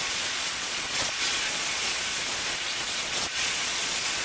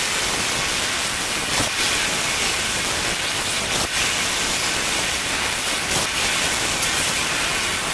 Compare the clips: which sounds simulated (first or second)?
first